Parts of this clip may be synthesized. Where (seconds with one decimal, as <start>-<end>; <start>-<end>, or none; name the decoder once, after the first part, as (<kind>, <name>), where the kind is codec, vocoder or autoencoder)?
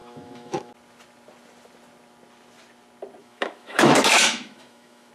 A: 0.0-0.7 (autoencoder, DAC-VAE); 3.2-5.1